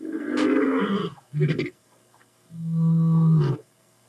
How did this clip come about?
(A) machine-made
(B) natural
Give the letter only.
A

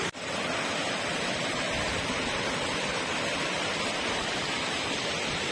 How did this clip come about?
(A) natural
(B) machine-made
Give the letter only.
A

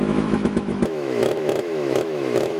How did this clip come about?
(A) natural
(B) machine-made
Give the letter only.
B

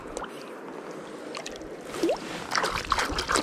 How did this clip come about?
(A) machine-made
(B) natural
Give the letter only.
B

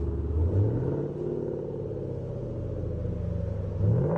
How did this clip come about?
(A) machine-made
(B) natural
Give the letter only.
B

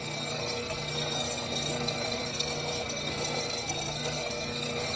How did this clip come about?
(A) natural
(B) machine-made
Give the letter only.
B